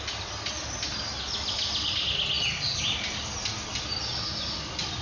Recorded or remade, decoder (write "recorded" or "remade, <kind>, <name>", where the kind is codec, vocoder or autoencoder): recorded